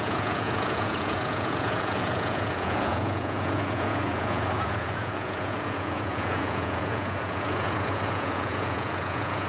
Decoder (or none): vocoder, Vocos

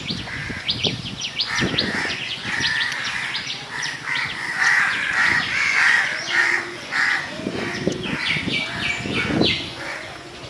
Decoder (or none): vocoder, Vocos